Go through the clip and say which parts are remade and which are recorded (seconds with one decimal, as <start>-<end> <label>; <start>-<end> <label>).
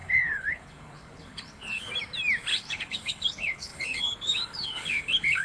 0.0-1.9 remade; 1.9-2.5 recorded; 2.5-5.4 remade